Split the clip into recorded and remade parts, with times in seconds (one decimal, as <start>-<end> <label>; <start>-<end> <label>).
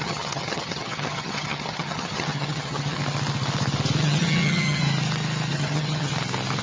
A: 0.0-3.0 remade; 3.0-4.0 recorded; 4.0-4.8 remade; 4.8-5.5 recorded; 5.5-6.1 remade; 6.1-6.6 recorded